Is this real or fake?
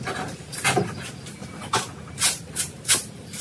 real